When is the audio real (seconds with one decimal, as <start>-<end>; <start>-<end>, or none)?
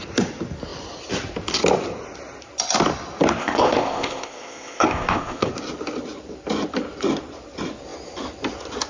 0.0-3.4; 5.5-8.9